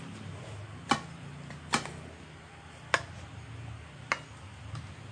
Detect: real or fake real